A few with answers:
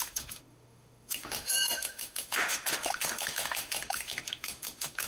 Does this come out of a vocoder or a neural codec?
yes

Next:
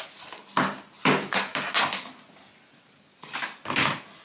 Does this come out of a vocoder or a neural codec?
no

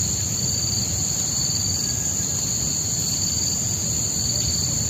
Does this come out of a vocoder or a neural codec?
no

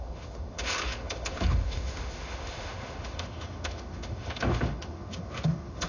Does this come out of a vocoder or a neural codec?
yes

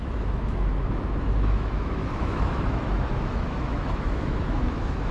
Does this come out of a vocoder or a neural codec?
yes